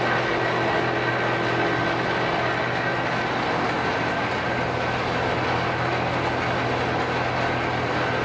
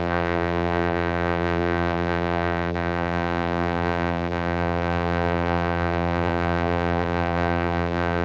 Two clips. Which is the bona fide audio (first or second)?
first